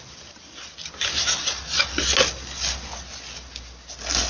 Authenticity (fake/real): real